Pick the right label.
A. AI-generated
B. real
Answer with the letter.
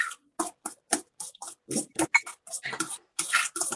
B